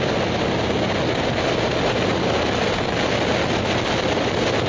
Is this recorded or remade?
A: recorded